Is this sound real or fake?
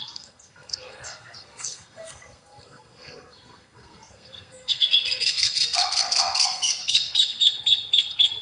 fake